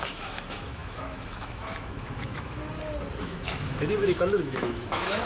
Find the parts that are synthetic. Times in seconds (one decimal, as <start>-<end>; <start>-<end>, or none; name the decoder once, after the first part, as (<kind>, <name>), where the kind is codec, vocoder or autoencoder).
0.0-2.6 (autoencoder, DAC-VAE); 3.2-5.3